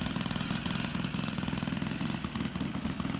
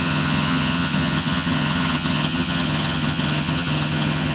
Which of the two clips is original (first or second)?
first